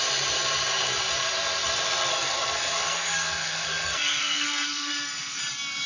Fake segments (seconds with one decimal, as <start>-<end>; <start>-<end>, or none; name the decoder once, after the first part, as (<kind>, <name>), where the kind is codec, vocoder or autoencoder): 2.1-5.4 (codec, SNAC)